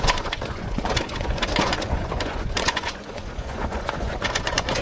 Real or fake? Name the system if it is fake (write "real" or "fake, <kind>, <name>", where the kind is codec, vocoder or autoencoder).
fake, vocoder, Vocos